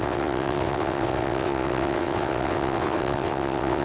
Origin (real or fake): fake